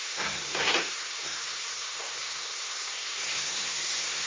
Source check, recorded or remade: remade